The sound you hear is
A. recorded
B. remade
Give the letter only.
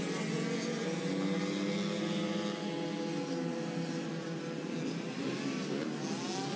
A